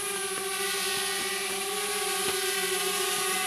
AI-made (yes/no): yes